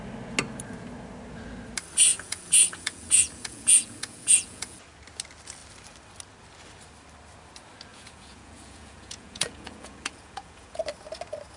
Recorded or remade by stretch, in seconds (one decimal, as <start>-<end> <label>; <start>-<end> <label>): 0.0-2.1 recorded; 2.1-4.8 remade; 4.8-7.9 recorded; 7.9-10.8 remade; 10.8-11.6 recorded